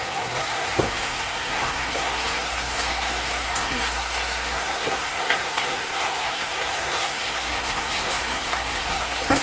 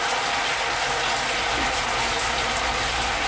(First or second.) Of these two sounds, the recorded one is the second